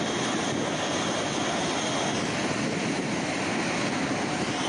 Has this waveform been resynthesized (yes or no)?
no